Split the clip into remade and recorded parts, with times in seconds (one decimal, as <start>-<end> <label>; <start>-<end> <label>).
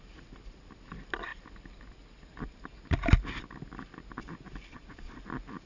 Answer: 0.0-4.7 recorded; 4.7-5.2 remade; 5.2-5.7 recorded